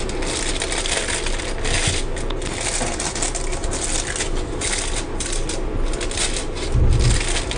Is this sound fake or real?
real